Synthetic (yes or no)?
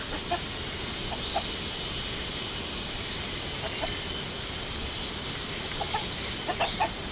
no